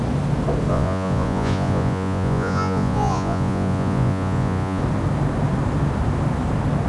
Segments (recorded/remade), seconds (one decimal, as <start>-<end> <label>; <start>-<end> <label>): 0.0-0.7 recorded; 0.7-4.8 remade; 4.8-6.9 recorded